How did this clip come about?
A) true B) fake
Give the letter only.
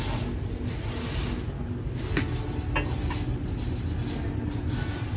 A